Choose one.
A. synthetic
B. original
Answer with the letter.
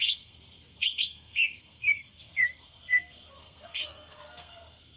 A